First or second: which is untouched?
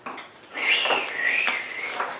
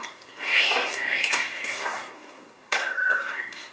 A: first